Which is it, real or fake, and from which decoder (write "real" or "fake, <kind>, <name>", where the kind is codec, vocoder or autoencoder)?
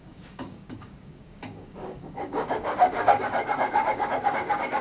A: fake, codec, DAC